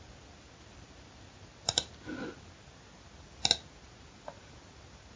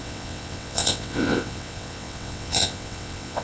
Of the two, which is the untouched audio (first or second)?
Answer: first